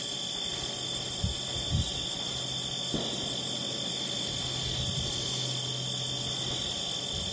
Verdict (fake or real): real